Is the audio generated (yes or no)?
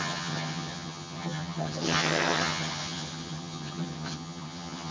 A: yes